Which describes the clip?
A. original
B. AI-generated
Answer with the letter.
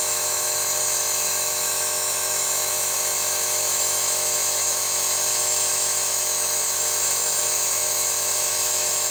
B